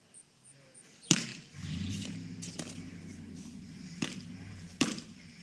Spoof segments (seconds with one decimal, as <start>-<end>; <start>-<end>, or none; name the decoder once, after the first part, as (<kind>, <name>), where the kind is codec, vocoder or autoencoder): 0.0-1.3 (vocoder, BigVGAN v2); 4.5-5.4